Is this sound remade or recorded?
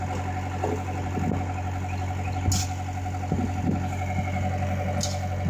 recorded